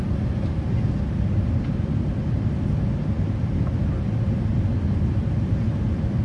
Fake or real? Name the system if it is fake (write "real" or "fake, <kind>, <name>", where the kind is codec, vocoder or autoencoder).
real